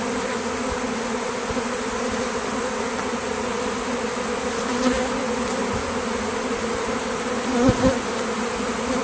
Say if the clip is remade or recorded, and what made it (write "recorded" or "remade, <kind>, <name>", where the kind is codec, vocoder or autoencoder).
recorded